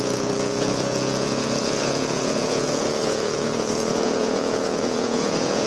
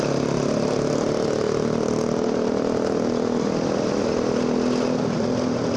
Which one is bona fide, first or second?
second